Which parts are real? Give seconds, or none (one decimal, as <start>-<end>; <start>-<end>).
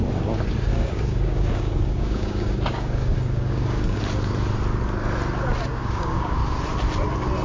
0.0-0.7; 4.0-5.7; 6.4-7.4